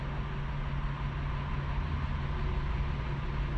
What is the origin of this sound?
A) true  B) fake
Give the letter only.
A